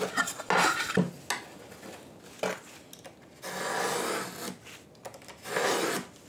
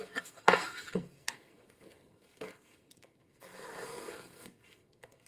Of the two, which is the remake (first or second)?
second